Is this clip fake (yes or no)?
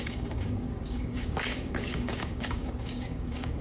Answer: yes